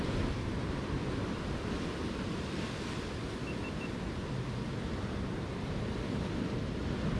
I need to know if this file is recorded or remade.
recorded